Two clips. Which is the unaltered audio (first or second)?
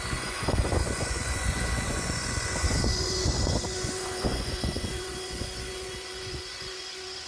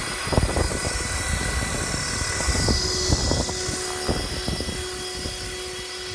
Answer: second